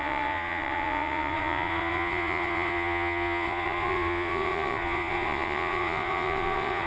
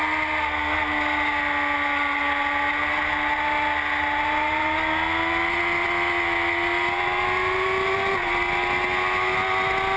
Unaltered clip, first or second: second